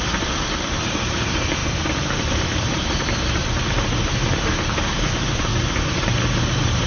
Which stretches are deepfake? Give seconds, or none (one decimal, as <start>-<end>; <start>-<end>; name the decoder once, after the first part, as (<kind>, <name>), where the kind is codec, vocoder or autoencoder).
0.0-1.6 (vocoder, BigVGAN v2); 2.2-6.9